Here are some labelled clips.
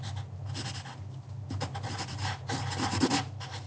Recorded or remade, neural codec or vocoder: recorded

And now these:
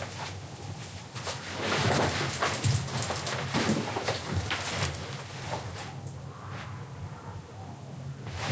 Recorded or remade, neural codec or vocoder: recorded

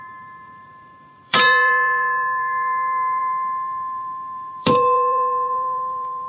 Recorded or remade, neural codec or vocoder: remade, vocoder, BigVGAN v2